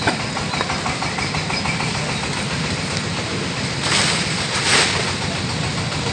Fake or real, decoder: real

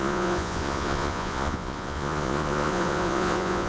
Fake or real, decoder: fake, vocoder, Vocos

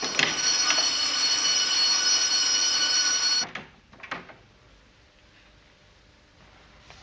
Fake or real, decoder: real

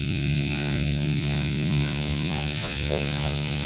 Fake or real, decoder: fake, vocoder, Vocos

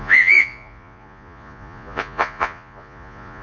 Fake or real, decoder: fake, vocoder, Vocos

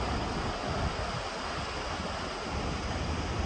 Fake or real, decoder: real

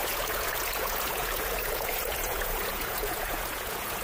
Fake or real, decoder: fake, vocoder, Vocos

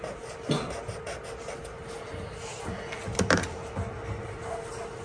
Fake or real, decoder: real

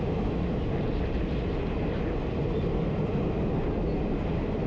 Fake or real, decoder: real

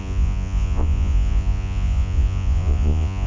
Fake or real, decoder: fake, vocoder, Vocos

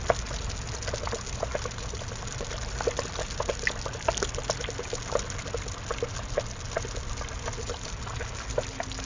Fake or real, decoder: real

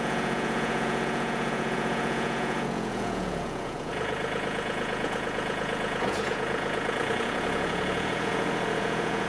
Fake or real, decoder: fake, vocoder, Vocos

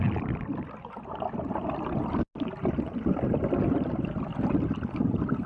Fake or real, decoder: real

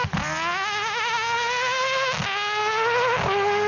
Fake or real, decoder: real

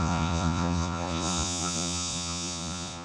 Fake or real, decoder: fake, vocoder, Vocos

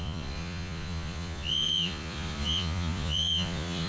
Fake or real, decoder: fake, vocoder, Vocos